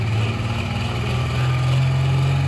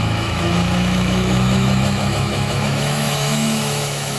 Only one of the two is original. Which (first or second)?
first